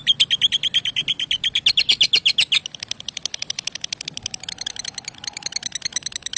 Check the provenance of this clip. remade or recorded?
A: recorded